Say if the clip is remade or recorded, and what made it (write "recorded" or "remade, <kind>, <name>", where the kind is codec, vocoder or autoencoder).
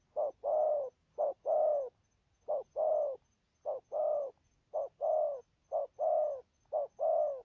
recorded